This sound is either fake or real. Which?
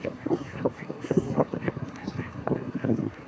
fake